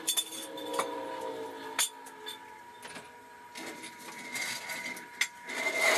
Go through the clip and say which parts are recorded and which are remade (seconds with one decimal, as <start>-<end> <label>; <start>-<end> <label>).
0.0-6.0 recorded